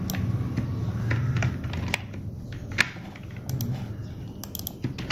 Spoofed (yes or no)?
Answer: no